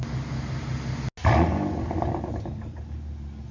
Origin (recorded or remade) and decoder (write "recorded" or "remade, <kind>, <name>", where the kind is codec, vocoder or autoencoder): recorded